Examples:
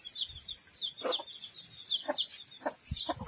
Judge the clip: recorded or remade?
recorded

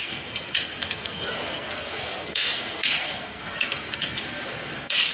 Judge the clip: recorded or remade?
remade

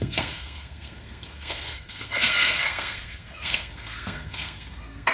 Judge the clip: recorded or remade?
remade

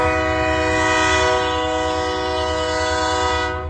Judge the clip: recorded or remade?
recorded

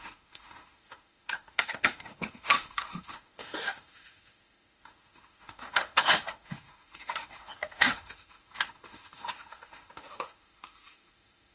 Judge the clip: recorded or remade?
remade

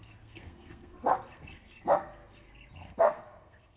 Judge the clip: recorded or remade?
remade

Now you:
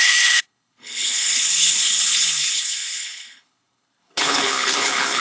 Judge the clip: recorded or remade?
remade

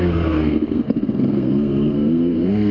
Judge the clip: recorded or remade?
remade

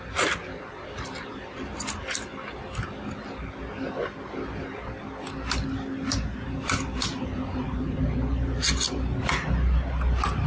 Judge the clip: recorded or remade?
recorded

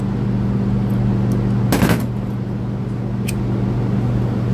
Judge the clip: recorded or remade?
recorded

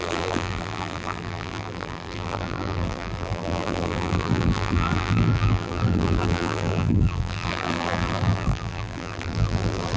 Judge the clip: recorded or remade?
remade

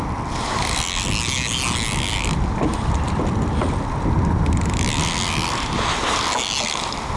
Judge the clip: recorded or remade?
recorded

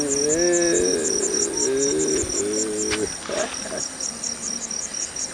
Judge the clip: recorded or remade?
recorded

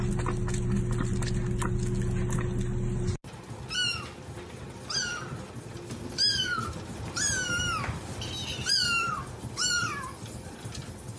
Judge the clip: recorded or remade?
recorded